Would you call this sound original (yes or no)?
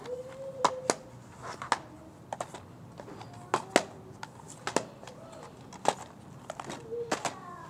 yes